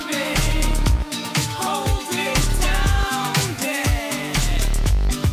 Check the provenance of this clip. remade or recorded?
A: remade